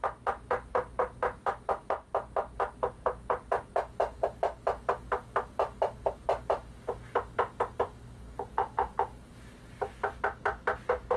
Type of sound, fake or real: real